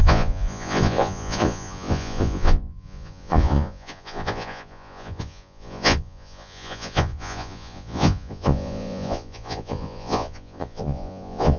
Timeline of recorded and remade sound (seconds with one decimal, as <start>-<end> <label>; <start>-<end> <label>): 0.0-11.6 remade